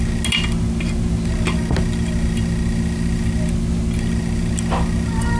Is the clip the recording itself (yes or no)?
yes